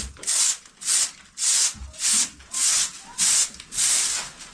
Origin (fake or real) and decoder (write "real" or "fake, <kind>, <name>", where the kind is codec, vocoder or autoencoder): real